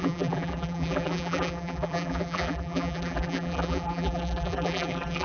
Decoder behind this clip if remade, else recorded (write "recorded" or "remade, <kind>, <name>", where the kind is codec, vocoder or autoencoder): remade, vocoder, BigVGAN v2